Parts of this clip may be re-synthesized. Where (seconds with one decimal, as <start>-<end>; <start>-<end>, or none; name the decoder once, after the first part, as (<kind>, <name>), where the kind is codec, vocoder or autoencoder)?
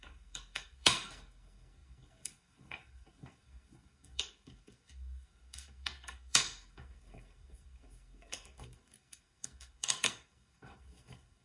0.0-11.4 (codec, SNAC)